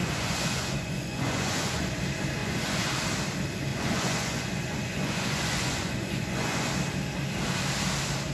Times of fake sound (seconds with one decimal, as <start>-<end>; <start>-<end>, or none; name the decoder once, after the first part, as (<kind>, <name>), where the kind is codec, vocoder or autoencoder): 0.0-2.0 (vocoder, Vocos); 2.4-2.9; 3.7-6.7